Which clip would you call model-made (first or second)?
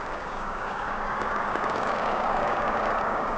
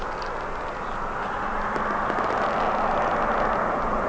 first